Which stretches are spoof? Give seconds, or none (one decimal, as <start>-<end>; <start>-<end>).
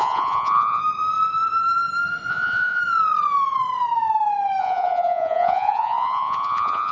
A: 0.0-0.8; 2.3-2.8; 4.6-6.9